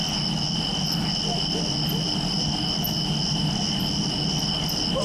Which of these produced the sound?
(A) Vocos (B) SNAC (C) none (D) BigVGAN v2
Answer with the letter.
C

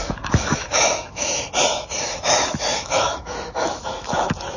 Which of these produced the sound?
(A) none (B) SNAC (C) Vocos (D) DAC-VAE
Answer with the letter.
D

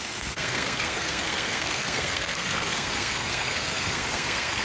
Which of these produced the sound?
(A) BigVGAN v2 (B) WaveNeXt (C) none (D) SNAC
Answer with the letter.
D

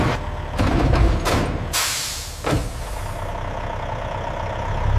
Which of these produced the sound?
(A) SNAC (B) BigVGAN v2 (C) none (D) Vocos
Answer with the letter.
C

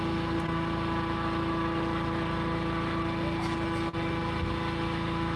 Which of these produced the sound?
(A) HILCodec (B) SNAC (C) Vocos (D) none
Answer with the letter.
D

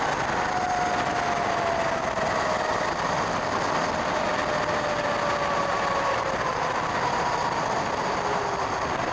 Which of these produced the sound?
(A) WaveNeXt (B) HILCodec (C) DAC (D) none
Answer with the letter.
D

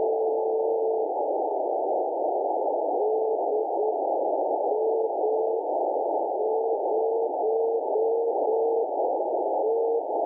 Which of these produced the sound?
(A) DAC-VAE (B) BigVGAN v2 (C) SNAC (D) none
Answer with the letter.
A